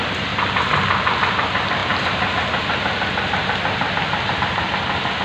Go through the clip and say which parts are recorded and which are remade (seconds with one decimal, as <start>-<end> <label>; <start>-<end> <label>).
0.0-5.2 recorded